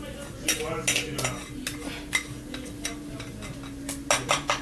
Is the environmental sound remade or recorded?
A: recorded